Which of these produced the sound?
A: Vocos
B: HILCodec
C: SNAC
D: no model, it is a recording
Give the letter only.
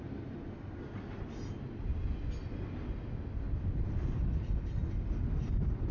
D